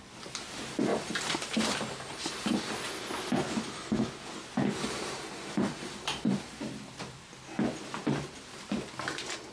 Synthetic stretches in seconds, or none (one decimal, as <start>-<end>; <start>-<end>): 0.9-2.7; 4.8-6.5